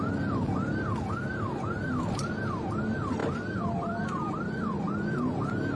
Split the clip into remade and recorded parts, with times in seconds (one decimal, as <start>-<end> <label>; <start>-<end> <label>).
0.0-3.2 recorded; 3.2-4.0 remade; 4.0-5.8 recorded